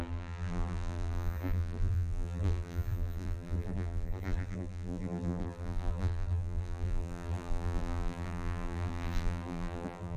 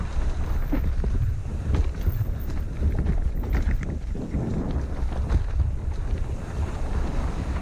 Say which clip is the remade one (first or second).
first